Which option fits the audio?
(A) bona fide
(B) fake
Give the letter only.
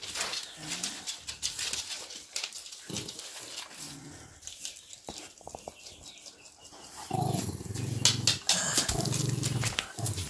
A